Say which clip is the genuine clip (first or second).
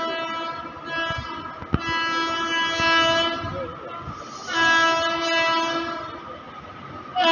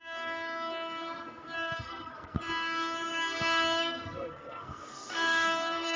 first